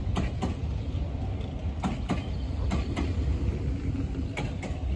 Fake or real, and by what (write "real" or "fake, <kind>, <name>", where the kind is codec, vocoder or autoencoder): real